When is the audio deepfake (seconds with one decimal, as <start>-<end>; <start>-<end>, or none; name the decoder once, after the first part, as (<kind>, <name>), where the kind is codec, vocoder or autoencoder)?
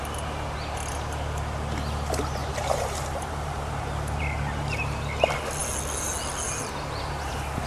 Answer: 2.4-4.2 (vocoder, BigVGAN v2)